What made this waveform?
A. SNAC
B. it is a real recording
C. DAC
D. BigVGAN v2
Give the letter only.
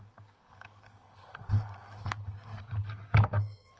C